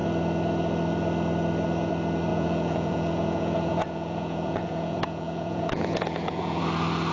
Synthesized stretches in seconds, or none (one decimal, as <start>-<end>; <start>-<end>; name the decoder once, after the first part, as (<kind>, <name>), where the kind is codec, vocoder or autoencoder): 2.3-6.6 (vocoder, Vocos)